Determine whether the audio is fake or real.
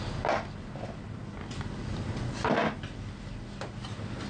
real